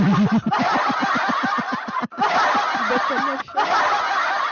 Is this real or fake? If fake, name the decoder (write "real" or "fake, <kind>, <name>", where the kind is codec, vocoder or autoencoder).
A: real